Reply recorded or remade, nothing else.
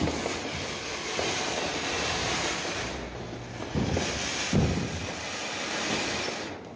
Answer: recorded